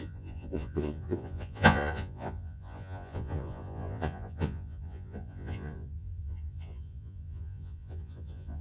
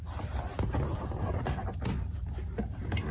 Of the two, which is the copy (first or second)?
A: first